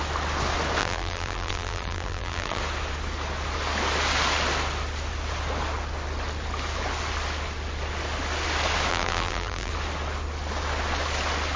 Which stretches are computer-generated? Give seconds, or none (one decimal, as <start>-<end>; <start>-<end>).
0.8-2.6; 8.9-9.7